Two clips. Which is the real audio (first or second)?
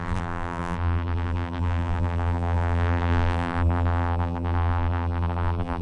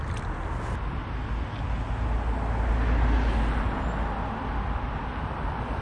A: second